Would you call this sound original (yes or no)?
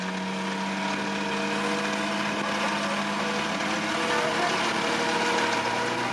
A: yes